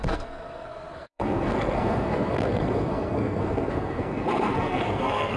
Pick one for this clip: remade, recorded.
remade